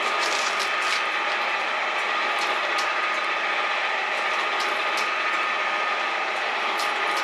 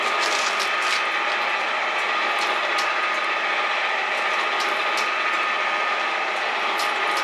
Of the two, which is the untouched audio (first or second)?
second